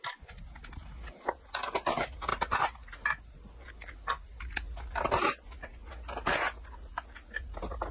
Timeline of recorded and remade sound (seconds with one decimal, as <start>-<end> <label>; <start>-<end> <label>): 0.0-7.9 recorded